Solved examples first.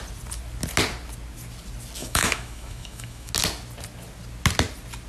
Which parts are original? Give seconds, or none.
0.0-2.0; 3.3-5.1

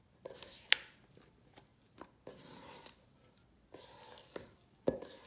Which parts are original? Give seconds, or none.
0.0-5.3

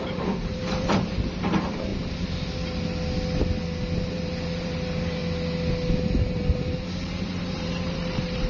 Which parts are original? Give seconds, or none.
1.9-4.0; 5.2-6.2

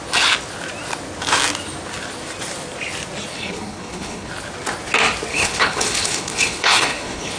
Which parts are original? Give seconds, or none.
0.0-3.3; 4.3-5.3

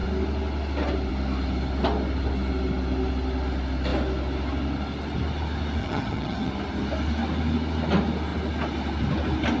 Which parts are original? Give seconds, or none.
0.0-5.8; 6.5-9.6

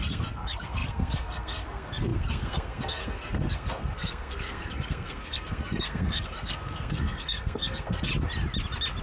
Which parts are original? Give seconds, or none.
8.1-9.0

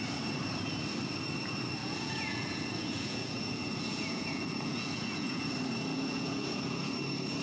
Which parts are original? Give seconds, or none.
0.0-1.8; 5.5-5.9; 6.9-7.4